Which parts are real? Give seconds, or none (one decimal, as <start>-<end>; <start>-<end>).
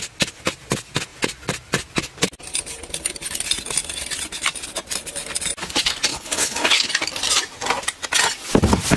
0.0-6.1; 6.9-9.0